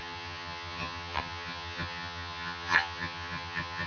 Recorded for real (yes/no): no